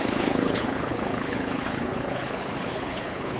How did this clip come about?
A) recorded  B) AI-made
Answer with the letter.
B